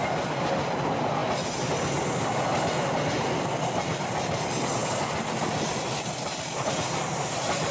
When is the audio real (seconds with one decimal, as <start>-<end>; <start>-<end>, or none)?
0.0-7.7